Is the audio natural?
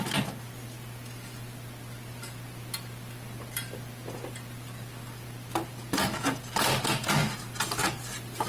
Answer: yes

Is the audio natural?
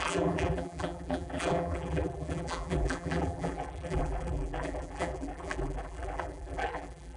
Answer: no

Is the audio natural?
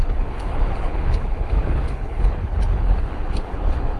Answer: no